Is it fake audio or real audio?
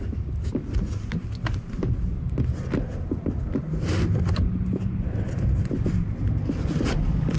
real